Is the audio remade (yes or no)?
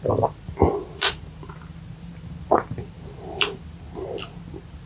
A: no